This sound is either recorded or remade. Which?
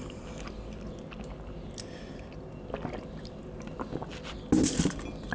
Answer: recorded